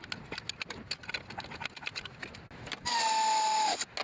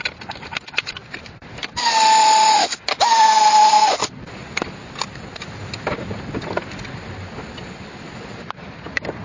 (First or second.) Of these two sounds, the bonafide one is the first